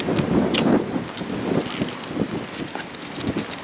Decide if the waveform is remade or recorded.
recorded